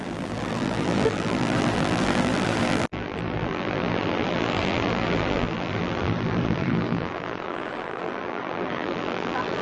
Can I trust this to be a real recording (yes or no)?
no